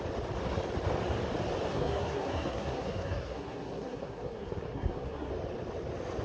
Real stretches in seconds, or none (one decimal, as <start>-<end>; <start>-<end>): 0.0-1.7; 5.3-6.2